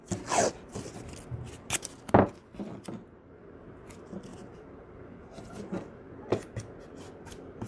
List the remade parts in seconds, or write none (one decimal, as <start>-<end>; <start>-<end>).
none